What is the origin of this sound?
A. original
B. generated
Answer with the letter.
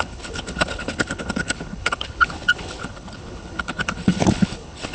B